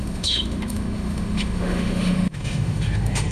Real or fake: fake